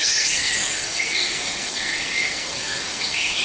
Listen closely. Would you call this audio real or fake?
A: fake